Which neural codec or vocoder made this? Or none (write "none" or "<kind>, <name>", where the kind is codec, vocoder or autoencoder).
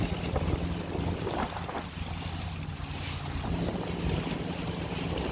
none